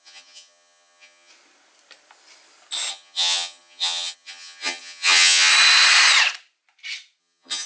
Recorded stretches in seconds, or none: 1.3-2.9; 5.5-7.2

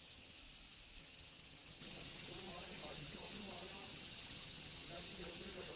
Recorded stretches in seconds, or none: 0.4-1.0